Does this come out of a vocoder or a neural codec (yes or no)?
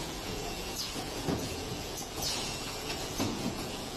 yes